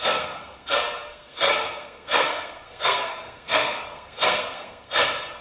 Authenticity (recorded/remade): remade